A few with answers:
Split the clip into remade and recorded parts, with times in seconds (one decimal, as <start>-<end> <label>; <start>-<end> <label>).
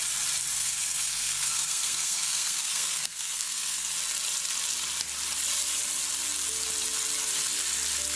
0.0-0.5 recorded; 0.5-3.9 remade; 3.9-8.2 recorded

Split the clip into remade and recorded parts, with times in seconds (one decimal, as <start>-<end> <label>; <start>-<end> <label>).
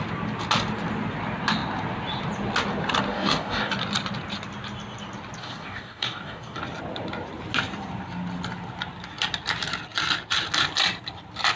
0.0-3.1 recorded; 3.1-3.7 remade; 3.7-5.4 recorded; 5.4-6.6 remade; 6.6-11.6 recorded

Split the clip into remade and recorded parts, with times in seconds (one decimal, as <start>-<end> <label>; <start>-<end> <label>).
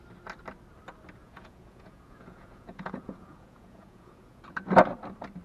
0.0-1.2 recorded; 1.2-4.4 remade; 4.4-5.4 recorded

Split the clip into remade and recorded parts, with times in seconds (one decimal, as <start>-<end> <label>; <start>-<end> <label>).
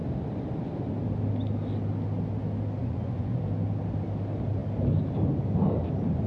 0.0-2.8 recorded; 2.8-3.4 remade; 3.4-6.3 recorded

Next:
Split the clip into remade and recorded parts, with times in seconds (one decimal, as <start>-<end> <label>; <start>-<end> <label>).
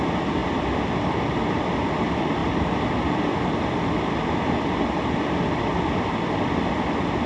0.0-7.3 recorded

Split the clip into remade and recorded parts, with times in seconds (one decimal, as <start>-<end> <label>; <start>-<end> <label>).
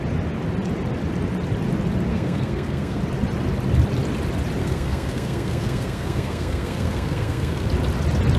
0.0-2.1 recorded; 2.1-3.0 remade; 3.0-4.6 recorded; 4.6-7.7 remade; 7.7-8.4 recorded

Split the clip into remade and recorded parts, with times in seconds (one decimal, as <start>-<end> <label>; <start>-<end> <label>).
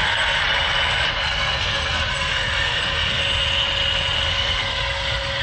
0.0-0.4 remade; 0.4-1.1 recorded; 1.1-3.2 remade; 3.2-4.3 recorded; 4.3-5.4 remade